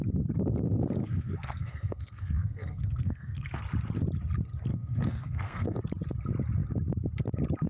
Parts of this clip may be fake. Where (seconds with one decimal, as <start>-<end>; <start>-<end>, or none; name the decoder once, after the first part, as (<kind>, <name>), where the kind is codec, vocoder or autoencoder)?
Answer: 1.0-3.6 (codec, SNAC); 4.7-5.8